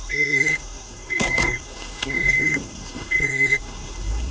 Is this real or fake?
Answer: fake